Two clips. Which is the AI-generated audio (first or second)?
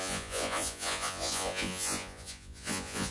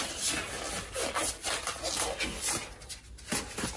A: first